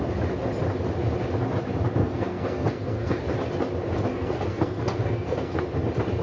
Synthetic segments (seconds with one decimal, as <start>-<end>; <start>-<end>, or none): 2.0-3.2; 4.1-5.6